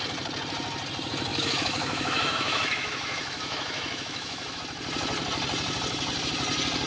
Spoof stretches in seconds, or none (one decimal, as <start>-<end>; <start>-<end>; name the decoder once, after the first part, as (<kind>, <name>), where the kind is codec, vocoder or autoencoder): 1.3-4.6 (autoencoder, DAC-VAE)